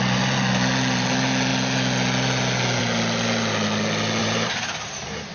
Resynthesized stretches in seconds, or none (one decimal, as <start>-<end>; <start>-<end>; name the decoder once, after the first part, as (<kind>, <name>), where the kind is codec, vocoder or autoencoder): 4.2-5.3 (vocoder, BigVGAN v2)

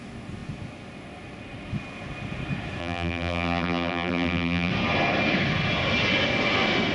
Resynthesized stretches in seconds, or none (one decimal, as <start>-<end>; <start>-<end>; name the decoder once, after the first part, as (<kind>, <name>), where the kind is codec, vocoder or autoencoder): 2.8-4.7 (vocoder, BigVGAN v2)